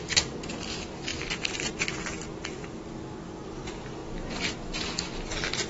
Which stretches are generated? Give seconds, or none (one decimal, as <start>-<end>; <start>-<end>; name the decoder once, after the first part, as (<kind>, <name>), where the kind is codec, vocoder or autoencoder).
1.1-1.7 (vocoder, BigVGAN v2); 4.0-4.8